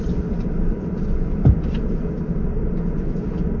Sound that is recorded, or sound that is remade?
recorded